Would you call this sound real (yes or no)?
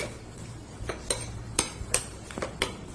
no